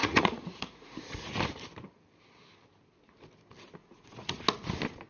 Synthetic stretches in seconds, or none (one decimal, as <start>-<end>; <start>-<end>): 0.0-1.4; 3.8-4.4